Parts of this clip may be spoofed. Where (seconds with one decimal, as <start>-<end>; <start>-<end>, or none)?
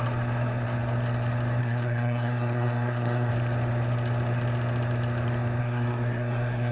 1.6-3.3; 5.6-6.7